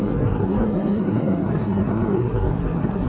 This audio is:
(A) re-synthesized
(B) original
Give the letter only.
A